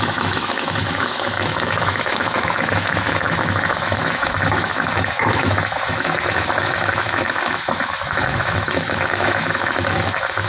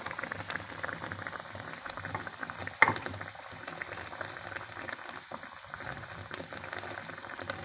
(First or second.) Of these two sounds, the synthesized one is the first